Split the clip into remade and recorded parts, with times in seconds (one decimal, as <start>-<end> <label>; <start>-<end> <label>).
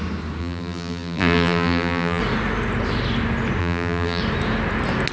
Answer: 0.0-0.4 recorded; 0.4-2.2 remade; 2.2-3.6 recorded; 3.6-4.2 remade; 4.2-5.1 recorded